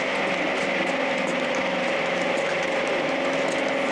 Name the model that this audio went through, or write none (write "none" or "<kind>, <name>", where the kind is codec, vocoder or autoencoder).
none